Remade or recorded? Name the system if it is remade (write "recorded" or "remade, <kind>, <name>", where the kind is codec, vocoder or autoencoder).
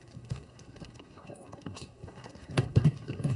remade, codec, SNAC